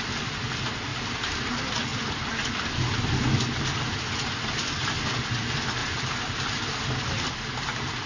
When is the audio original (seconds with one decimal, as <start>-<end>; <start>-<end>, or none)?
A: 0.0-0.9; 1.5-5.8; 6.8-8.1